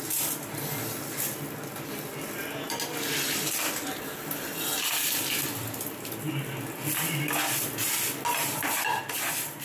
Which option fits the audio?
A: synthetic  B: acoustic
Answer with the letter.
B